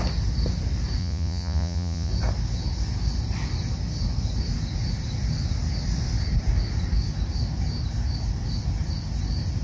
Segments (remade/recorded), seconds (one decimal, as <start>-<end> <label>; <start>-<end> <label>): 0.0-1.0 recorded; 1.0-2.1 remade; 2.1-9.6 recorded